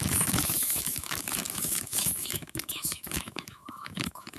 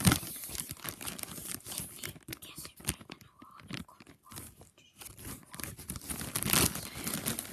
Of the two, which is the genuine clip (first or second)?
second